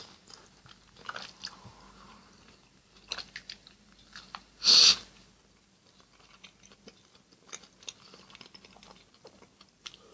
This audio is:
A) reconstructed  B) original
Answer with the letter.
B